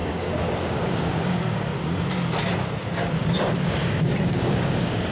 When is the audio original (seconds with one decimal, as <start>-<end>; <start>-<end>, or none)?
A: 2.0-3.0